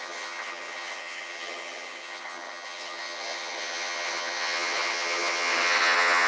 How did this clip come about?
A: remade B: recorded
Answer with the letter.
A